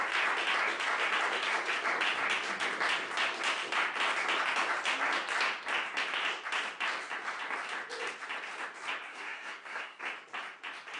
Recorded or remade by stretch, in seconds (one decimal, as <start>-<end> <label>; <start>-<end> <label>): 0.0-9.1 recorded; 9.1-10.0 remade; 10.0-11.0 recorded